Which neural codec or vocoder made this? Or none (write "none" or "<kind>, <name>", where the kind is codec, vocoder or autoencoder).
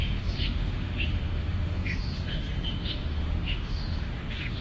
autoencoder, DAC-VAE